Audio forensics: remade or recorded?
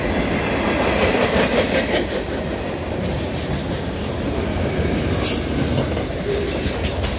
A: recorded